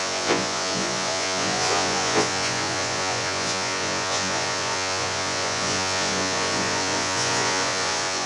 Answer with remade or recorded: remade